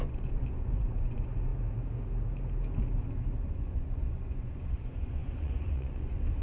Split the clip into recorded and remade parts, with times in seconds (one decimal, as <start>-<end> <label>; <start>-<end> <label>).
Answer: 0.0-1.5 remade; 1.5-3.5 recorded; 3.5-6.4 remade